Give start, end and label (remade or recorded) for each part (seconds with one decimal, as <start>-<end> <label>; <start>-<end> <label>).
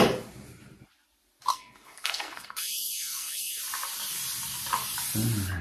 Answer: 0.0-1.5 recorded; 1.5-3.6 remade; 3.6-5.6 recorded